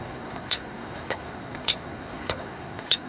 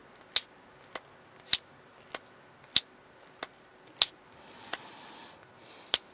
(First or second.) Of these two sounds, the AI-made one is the first